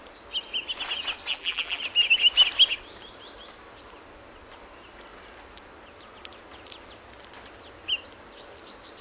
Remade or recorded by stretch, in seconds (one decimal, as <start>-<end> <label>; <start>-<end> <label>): 0.0-1.3 recorded; 1.3-1.8 remade; 1.8-9.0 recorded

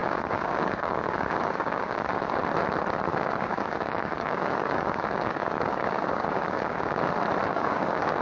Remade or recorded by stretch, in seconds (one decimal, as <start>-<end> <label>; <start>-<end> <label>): 0.0-2.4 remade; 2.4-3.1 recorded; 3.1-7.1 remade; 7.1-7.5 recorded; 7.5-8.2 remade